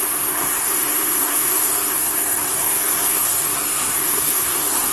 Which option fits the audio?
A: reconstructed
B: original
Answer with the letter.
A